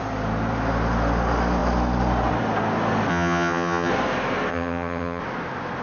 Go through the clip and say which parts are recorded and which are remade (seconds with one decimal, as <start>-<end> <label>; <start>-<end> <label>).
0.0-3.1 recorded; 3.1-3.9 remade; 3.9-4.5 recorded; 4.5-5.2 remade; 5.2-5.8 recorded